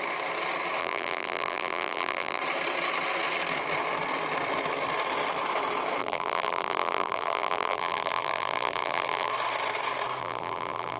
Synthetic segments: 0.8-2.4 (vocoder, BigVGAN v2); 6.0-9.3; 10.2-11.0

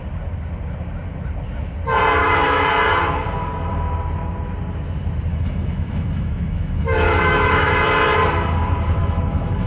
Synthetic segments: 2.2-2.7 (autoencoder, DAC-VAE); 5.3-7.7; 9.0-9.7

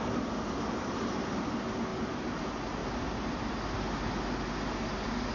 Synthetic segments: 1.9-2.4 (vocoder, BigVGAN v2); 2.8-3.8

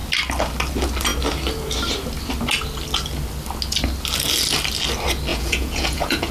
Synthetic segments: 5.3-6.3 (vocoder, Vocos)